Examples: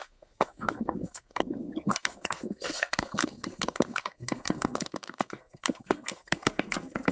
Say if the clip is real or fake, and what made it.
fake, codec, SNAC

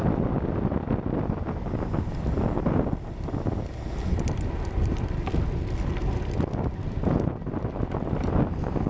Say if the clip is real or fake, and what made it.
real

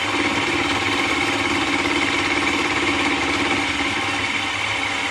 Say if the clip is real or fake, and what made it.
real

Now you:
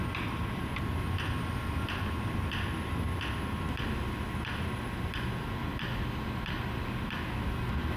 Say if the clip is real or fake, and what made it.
real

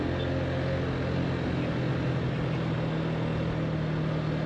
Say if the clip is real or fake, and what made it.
real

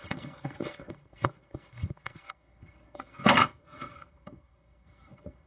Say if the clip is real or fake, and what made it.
fake, codec, SNAC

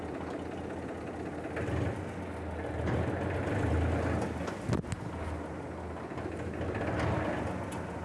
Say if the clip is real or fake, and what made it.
real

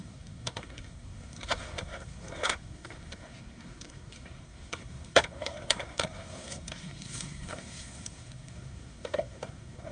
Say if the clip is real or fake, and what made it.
fake, codec, SNAC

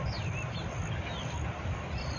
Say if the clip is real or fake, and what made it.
real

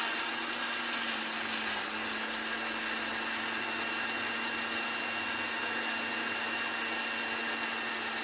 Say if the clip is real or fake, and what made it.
real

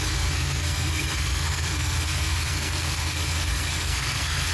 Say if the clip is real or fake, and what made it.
fake, codec, SNAC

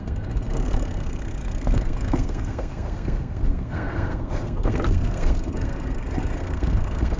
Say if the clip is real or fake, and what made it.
fake, codec, SNAC